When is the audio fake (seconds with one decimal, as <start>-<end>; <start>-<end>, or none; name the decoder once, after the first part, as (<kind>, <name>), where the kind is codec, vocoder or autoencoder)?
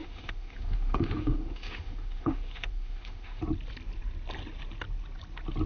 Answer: 0.0-3.4 (autoencoder, DAC-VAE)